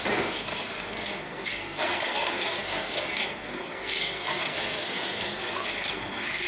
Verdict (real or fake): fake